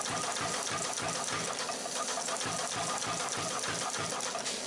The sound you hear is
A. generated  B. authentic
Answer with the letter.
B